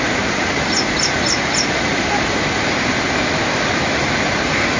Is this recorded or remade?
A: recorded